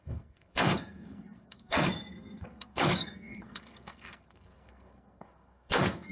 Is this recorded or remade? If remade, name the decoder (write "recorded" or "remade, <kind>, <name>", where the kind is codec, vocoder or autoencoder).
remade, codec, SNAC